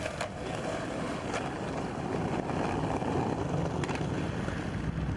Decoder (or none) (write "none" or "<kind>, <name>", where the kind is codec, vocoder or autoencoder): none